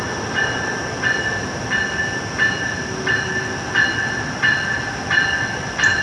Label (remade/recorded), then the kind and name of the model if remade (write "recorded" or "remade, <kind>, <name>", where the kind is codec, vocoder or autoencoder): recorded